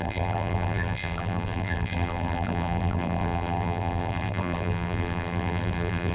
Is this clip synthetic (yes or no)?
yes